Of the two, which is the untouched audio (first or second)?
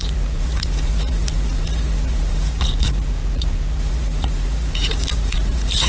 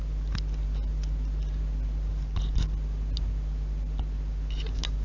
second